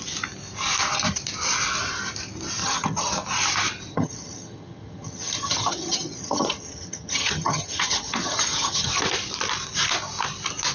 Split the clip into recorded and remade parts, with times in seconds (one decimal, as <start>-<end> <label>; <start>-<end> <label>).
0.0-2.6 recorded; 2.6-3.1 remade; 3.1-3.9 recorded; 3.9-8.9 remade; 8.9-10.7 recorded